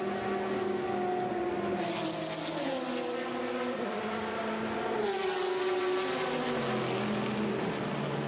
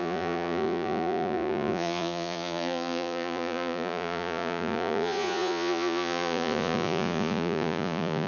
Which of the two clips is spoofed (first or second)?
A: second